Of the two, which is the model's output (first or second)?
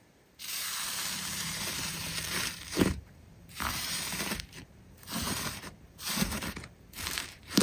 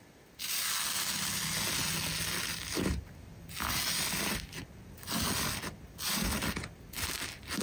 first